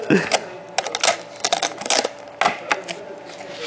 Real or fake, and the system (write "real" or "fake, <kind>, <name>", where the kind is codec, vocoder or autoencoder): real